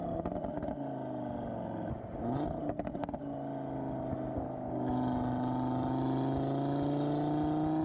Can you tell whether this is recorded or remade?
recorded